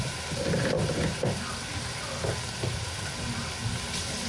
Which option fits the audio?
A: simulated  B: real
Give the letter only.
B